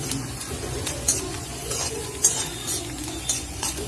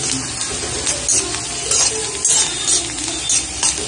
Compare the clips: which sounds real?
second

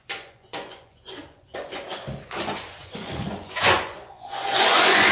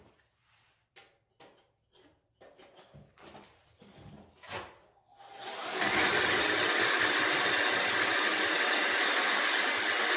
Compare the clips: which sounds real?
second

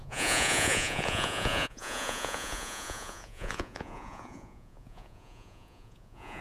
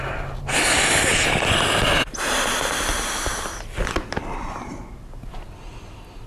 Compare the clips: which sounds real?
second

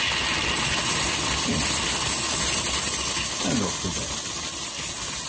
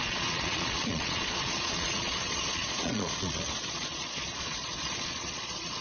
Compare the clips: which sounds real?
first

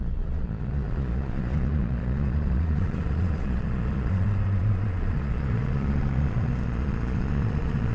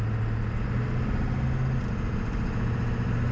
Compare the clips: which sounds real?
second